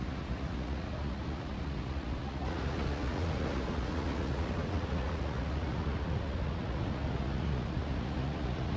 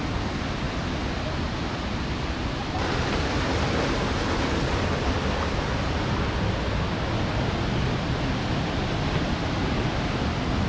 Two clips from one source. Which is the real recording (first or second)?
second